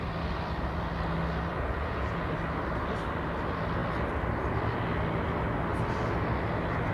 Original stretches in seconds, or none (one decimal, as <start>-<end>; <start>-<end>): 0.0-1.5; 2.3-6.9